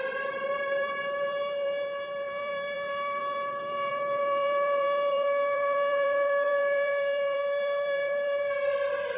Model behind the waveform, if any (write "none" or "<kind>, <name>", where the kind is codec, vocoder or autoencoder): vocoder, BigVGAN v2